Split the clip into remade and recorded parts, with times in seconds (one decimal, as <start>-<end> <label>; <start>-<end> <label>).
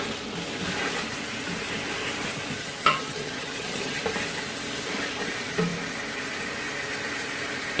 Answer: 0.0-2.6 recorded; 2.6-4.0 remade; 4.0-7.8 recorded